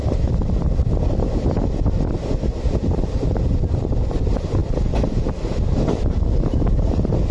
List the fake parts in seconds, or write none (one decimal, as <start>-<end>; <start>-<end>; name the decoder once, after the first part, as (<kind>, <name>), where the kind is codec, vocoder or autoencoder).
0.0-4.6 (vocoder, BigVGAN v2); 6.4-7.3